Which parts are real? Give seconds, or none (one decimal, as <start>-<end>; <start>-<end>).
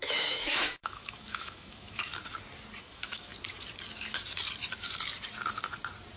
2.1-2.8; 3.3-6.2